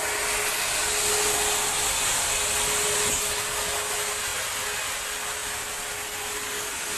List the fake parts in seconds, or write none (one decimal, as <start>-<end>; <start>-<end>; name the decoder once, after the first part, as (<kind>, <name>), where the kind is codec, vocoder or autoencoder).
none